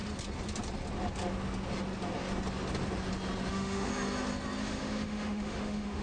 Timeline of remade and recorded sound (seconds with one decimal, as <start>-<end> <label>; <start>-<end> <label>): 0.0-3.5 recorded; 3.5-3.9 remade; 3.9-4.6 recorded; 4.6-6.0 remade